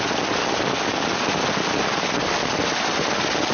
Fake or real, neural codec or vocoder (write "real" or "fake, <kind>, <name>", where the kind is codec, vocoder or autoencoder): real